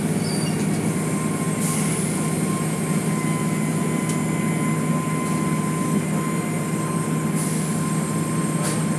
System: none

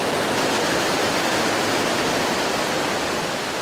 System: none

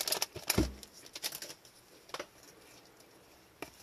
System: none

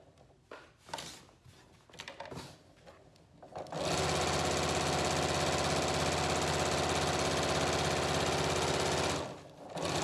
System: none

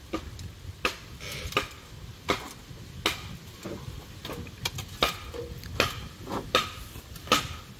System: none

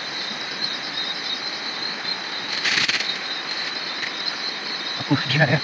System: vocoder, BigVGAN v2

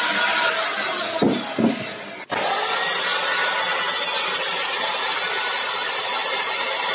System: none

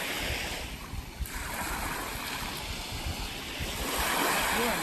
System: none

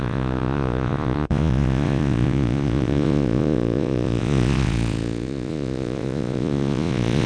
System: vocoder, Vocos